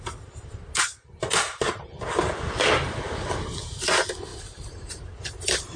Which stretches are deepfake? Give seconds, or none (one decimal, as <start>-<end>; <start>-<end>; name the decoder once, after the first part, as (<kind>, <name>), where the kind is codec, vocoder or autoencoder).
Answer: 4.3-5.8 (vocoder, BigVGAN v2)